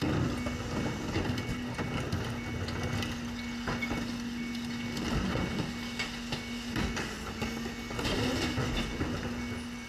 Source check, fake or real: real